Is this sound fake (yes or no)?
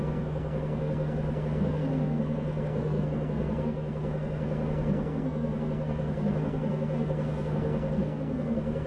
yes